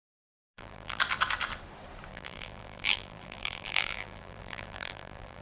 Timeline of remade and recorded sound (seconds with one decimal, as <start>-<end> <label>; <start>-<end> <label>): 0.0-0.4 recorded; 0.4-1.0 remade; 1.0-2.1 recorded; 2.1-5.4 remade